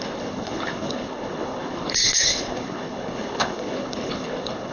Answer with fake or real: fake